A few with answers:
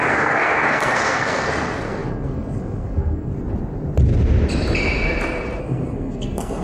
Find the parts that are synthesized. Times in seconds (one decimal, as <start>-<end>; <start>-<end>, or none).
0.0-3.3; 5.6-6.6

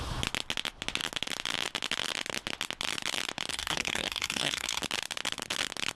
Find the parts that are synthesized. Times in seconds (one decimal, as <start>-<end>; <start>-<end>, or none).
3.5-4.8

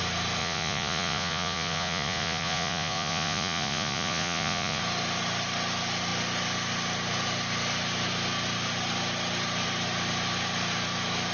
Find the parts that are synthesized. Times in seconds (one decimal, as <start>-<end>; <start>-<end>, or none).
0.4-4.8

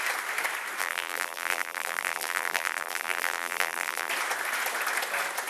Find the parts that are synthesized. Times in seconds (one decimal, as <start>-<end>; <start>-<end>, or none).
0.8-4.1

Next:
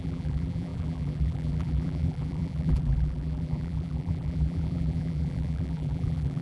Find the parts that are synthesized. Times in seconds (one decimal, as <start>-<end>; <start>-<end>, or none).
0.0-6.4